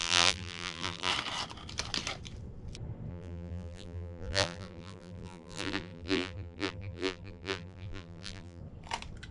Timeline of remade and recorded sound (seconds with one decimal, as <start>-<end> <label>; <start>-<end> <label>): 0.0-1.1 remade; 1.1-3.1 recorded; 3.1-8.6 remade; 8.6-9.3 recorded